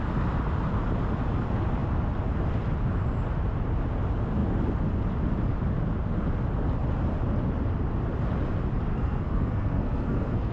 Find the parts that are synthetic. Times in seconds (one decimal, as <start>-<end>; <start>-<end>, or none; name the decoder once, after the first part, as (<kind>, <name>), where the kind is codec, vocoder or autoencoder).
8.9-10.5 (codec, SNAC)